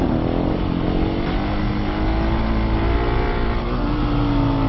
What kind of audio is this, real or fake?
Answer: real